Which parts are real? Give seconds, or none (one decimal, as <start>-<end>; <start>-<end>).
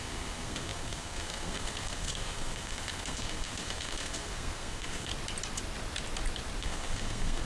5.1-6.6